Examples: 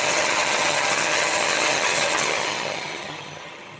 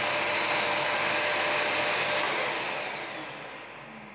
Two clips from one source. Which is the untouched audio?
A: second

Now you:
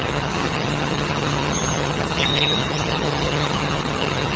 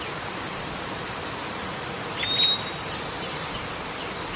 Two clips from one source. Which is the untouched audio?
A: second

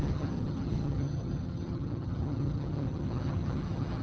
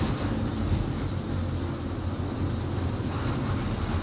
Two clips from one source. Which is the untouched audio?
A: second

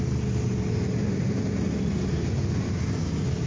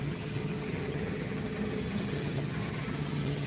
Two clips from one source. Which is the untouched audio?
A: first